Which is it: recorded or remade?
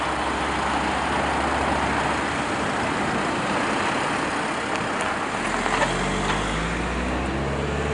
recorded